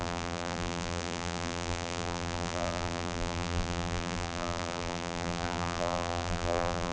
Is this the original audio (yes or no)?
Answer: no